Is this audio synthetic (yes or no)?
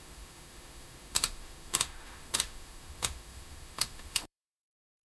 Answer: yes